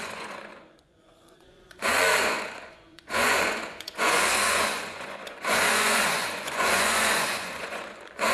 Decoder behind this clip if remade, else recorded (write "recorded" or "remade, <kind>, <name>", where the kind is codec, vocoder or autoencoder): remade, vocoder, Vocos